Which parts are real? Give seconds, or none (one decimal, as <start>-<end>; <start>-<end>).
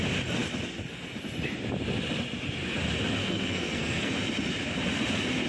0.0-3.2; 4.1-5.5